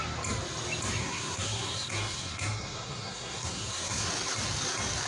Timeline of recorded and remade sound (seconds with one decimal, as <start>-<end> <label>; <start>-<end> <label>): 0.0-1.0 recorded; 1.0-4.1 remade; 4.1-5.1 recorded